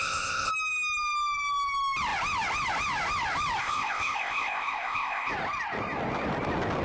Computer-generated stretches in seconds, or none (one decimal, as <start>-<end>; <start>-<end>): 0.0-0.5; 3.6-5.3